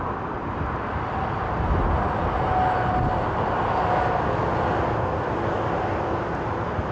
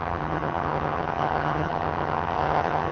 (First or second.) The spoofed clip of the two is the second